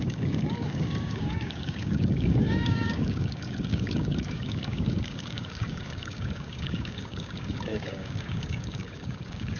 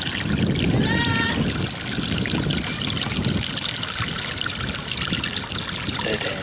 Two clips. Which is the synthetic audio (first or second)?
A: first